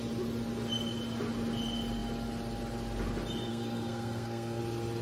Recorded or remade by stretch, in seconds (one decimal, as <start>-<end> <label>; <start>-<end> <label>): 0.0-3.5 recorded; 3.5-4.6 remade; 4.6-5.0 recorded

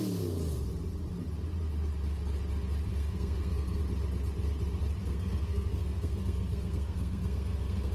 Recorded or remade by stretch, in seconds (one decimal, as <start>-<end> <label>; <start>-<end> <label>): 0.0-2.9 recorded; 2.9-3.8 remade; 3.8-5.0 recorded; 5.0-7.9 remade

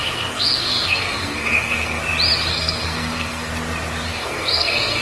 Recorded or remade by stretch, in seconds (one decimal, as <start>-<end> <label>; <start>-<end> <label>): 0.0-2.0 remade; 2.0-2.5 recorded; 2.5-3.5 remade; 3.5-4.1 recorded; 4.1-5.0 remade

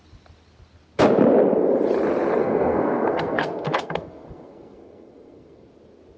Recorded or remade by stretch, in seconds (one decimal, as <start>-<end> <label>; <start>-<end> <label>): 0.0-2.4 recorded; 2.4-5.7 remade; 5.7-6.2 recorded

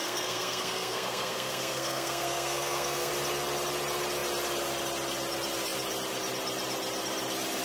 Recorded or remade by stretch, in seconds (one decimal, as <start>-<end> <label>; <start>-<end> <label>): 0.0-3.1 remade; 3.1-7.6 recorded

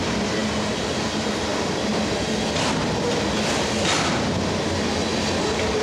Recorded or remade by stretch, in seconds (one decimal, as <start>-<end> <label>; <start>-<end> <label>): 0.0-5.8 recorded

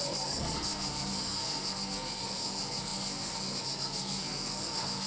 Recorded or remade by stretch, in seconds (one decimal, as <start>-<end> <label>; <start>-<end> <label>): 0.0-5.1 remade